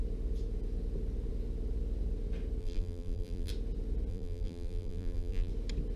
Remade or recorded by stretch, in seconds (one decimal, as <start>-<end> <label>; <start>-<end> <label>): 0.0-2.6 recorded; 2.6-3.5 remade; 3.5-4.1 recorded; 4.1-5.5 remade; 5.5-6.0 recorded